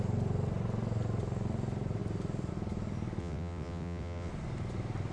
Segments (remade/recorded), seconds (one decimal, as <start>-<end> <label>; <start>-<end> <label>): 0.0-3.2 recorded; 3.2-4.3 remade; 4.3-5.1 recorded